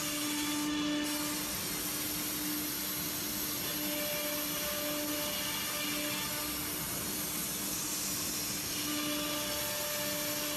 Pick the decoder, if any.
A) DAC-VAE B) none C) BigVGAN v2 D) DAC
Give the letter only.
B